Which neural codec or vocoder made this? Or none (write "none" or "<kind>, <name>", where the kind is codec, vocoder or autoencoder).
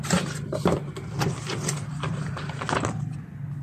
none